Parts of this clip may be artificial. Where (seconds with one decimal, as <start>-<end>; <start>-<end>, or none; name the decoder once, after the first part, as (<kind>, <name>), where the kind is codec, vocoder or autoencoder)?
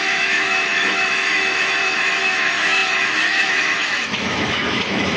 0.0-5.2 (autoencoder, DAC-VAE)